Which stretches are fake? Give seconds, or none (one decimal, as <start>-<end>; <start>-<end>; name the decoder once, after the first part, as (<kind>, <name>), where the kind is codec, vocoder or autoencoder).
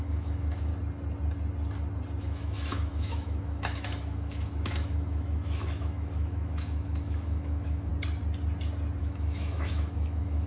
0.0-0.7 (autoencoder, DAC-VAE); 2.2-7.9; 9.0-10.5